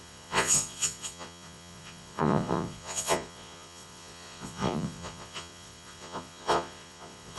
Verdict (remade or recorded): remade